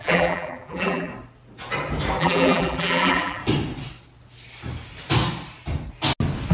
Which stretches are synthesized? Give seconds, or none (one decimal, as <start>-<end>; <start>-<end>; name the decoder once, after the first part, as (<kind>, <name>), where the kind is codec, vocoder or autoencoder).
0.0-1.1 (vocoder, BigVGAN v2); 2.2-3.4